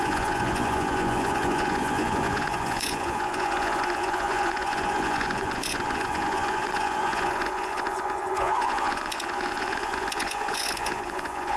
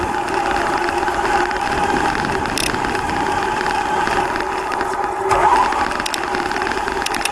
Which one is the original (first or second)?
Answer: second